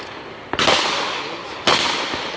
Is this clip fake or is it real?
real